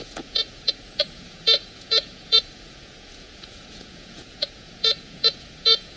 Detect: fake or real fake